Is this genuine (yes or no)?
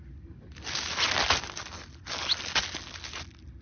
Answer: yes